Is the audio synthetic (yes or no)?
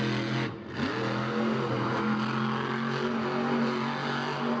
no